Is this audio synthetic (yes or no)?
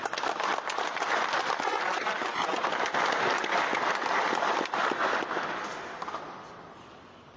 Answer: no